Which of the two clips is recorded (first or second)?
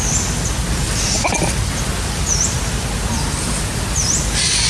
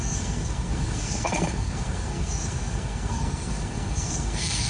first